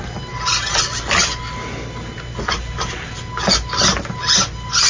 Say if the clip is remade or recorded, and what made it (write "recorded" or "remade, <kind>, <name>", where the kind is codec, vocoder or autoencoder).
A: recorded